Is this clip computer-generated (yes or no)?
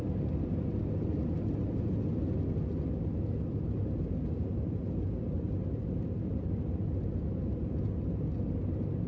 no